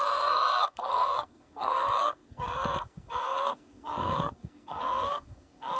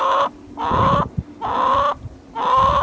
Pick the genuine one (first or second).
second